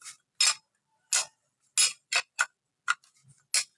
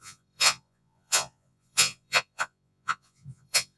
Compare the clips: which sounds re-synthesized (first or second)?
second